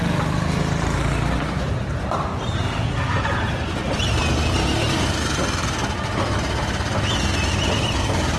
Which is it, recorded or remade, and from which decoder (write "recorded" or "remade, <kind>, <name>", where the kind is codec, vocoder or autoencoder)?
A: recorded